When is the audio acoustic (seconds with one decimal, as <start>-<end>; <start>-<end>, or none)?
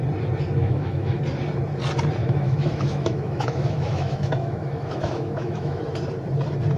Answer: 0.0-0.6; 1.2-2.2; 5.8-6.8